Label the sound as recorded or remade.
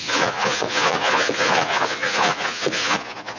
remade